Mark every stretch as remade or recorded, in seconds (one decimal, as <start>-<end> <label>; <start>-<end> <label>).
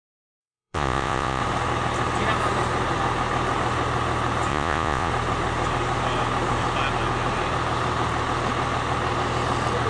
0.0-0.4 recorded; 0.4-1.4 remade; 1.4-4.5 recorded; 4.5-5.1 remade; 5.1-9.9 recorded